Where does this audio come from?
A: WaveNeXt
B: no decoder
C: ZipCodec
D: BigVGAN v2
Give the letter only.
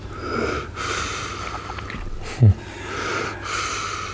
B